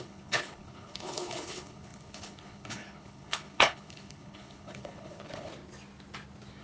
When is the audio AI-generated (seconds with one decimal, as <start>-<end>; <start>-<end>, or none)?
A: 0.0-5.5